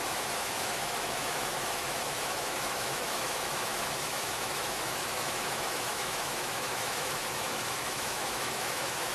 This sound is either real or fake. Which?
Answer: fake